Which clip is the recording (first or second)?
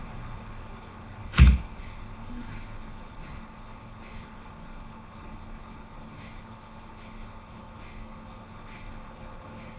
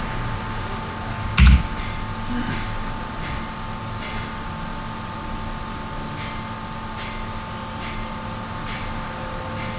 second